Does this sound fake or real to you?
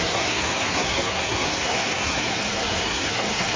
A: fake